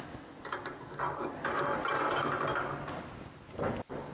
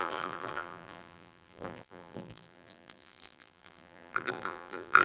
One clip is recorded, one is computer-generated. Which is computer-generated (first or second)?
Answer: second